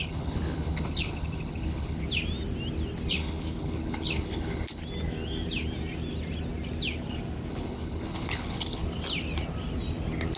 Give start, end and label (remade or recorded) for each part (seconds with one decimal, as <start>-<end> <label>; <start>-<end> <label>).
0.0-2.0 remade; 2.0-3.1 recorded; 3.1-4.8 remade; 4.8-7.5 recorded; 7.5-8.8 remade; 8.8-10.4 recorded